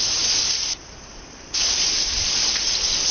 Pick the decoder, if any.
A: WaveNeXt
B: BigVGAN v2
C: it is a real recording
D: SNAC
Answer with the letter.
C